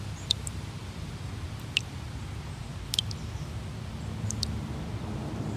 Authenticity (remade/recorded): recorded